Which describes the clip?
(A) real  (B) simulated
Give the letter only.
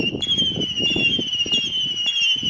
A